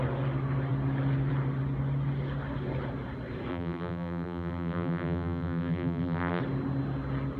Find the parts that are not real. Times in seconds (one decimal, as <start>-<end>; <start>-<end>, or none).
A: 3.5-6.4